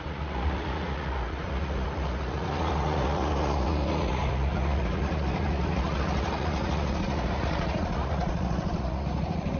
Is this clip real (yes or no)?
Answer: no